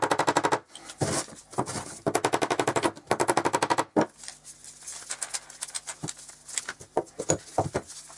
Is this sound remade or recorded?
recorded